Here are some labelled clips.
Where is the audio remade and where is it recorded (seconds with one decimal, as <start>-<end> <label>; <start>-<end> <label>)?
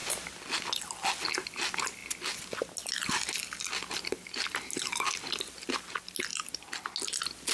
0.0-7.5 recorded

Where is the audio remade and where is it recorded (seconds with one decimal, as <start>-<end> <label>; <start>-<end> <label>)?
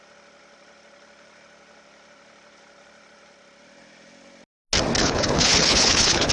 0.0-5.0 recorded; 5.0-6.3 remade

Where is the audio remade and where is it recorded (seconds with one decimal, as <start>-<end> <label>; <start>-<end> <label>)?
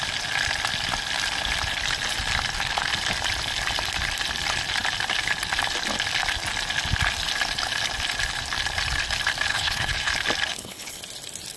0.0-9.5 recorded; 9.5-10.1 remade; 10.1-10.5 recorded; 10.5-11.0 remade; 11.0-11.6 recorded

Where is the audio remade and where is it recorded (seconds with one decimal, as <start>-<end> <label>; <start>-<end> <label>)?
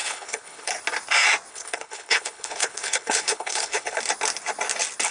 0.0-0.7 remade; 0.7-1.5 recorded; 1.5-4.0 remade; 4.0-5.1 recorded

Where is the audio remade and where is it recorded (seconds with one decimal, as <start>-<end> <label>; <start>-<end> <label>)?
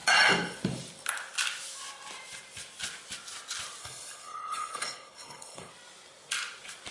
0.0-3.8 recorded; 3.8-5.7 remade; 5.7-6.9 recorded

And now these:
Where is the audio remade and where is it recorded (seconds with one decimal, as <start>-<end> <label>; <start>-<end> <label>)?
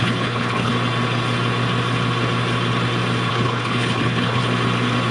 0.0-0.7 remade; 0.7-3.3 recorded; 3.3-4.4 remade; 4.4-5.1 recorded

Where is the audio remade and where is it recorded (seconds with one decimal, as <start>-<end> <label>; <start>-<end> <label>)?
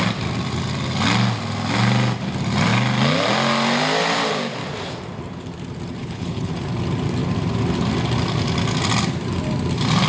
0.0-6.0 recorded; 6.0-6.5 remade; 6.5-10.1 recorded